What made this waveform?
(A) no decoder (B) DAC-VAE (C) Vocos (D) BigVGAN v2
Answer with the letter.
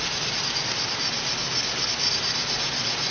A